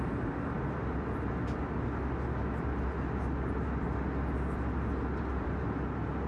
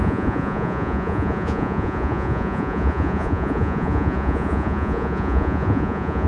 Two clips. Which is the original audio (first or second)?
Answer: first